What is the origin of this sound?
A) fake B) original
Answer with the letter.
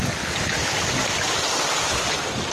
B